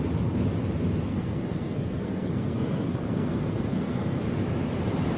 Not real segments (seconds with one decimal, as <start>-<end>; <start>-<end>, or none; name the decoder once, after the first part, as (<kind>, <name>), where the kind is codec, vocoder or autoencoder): 1.1-4.2 (codec, SNAC)